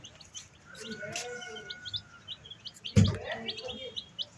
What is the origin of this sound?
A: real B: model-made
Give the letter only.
A